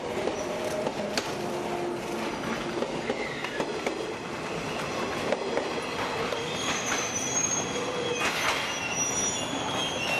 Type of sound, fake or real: real